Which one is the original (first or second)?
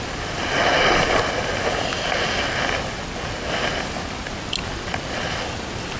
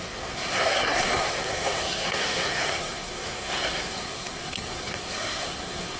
first